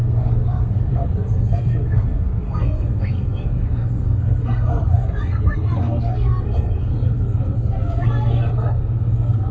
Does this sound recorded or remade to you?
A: remade